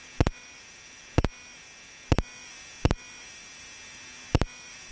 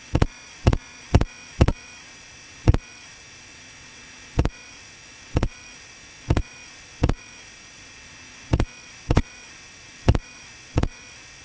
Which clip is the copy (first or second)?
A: second